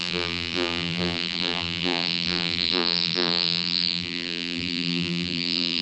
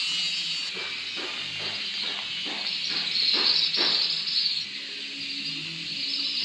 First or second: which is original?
second